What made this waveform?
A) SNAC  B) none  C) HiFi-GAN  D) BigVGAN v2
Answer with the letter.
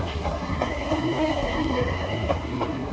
A